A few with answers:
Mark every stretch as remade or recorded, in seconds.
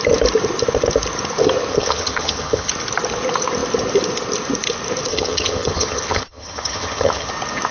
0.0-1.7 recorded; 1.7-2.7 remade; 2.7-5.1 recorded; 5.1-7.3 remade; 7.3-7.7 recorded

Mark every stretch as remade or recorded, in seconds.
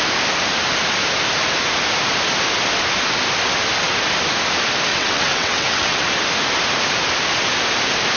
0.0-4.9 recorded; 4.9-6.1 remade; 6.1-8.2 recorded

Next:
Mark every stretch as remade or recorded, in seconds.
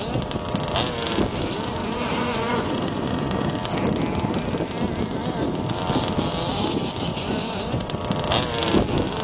0.0-1.8 recorded; 1.8-3.5 remade; 3.5-7.1 recorded; 7.1-8.0 remade; 8.0-9.2 recorded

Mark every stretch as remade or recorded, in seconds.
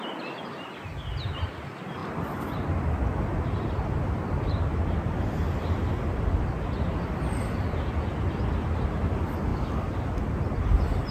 0.0-11.1 recorded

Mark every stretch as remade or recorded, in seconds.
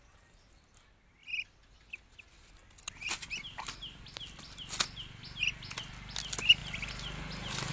0.0-7.7 recorded